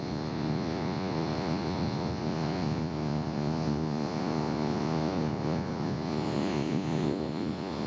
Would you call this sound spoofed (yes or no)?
yes